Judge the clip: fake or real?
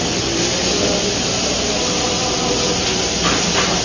real